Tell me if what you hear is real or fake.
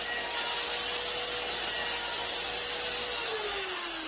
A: real